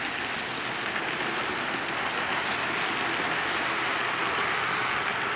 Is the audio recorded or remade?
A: recorded